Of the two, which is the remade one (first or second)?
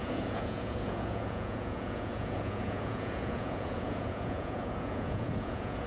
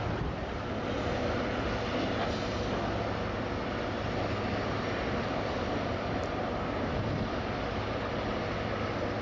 first